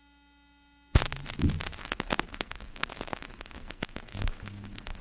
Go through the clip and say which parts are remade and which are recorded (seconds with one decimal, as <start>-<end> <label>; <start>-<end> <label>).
0.0-1.8 recorded; 1.8-5.0 remade